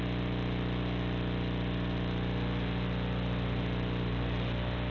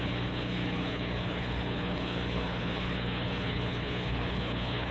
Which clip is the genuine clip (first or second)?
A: first